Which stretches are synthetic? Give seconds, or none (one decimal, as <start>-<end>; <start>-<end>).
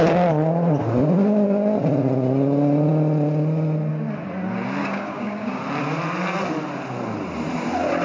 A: 4.8-5.6